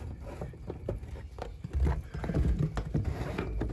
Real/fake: real